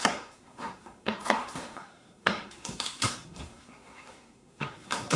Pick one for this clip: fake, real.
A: fake